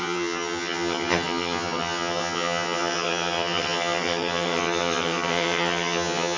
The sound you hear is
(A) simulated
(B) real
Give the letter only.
A